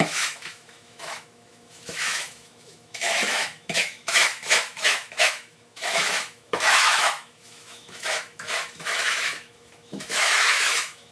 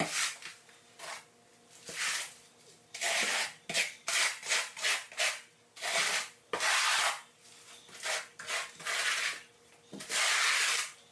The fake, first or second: first